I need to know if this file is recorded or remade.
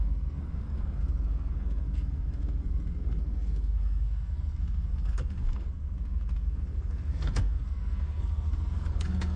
remade